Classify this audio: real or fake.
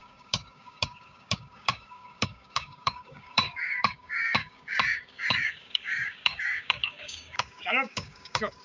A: fake